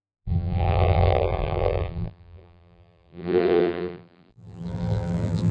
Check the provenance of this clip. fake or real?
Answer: fake